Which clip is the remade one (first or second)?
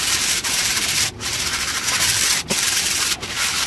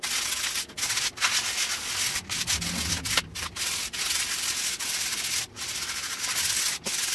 first